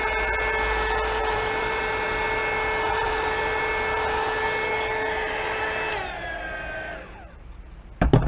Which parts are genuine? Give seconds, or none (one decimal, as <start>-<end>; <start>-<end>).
0.0-1.2; 1.8-2.9; 3.6-8.3